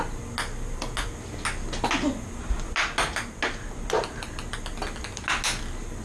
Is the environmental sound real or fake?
real